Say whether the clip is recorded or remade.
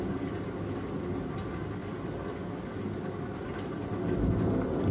recorded